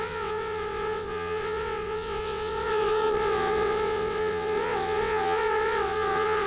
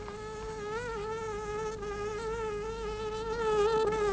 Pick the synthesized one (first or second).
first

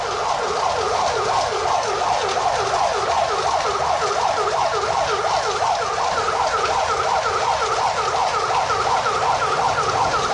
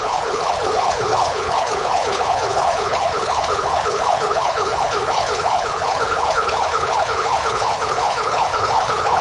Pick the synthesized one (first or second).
second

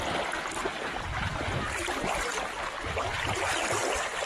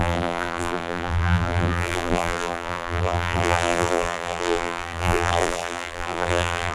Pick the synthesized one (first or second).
second